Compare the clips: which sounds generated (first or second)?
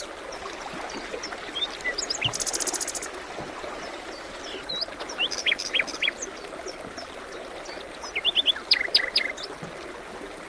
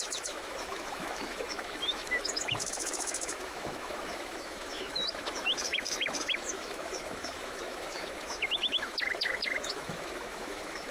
second